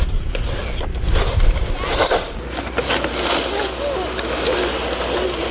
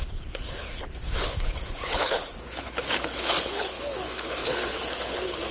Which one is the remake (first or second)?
second